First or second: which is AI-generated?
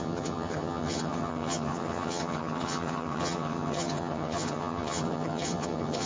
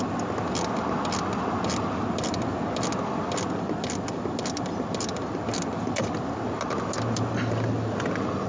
first